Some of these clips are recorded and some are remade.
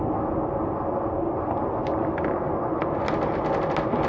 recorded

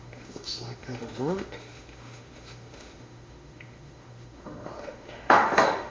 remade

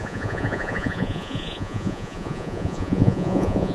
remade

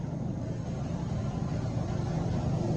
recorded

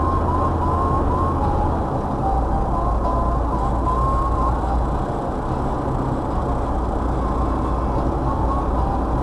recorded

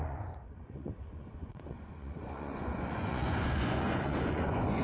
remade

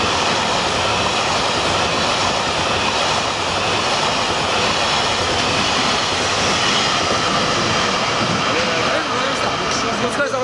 recorded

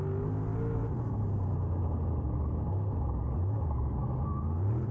recorded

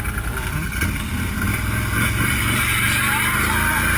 recorded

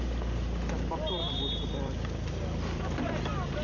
remade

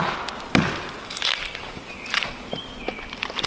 recorded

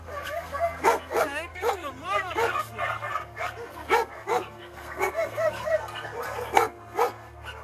remade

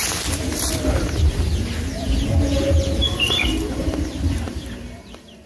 remade